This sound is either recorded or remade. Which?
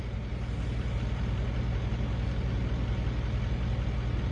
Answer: recorded